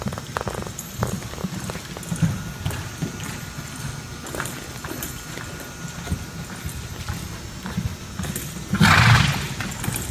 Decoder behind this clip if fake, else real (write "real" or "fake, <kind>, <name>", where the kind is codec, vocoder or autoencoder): real